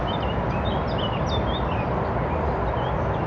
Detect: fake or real real